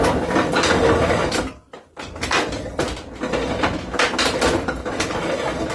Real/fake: real